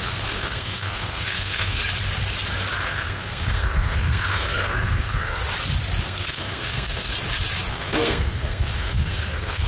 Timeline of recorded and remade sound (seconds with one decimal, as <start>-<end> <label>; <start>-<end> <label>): 0.0-1.8 remade; 1.8-2.8 recorded; 2.8-5.4 remade; 5.4-6.0 recorded; 6.0-7.1 remade; 7.1-7.7 recorded; 7.7-9.7 remade